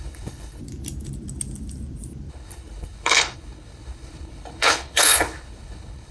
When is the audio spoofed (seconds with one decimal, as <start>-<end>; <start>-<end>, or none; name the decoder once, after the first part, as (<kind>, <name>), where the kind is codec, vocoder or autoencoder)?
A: 0.0-0.6 (codec, HILCodec); 2.3-6.1